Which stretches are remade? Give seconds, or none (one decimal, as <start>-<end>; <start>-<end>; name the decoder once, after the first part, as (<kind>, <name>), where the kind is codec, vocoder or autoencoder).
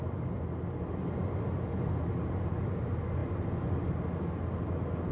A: none